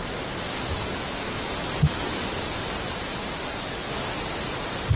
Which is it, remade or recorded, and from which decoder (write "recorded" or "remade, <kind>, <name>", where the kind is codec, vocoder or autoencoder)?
recorded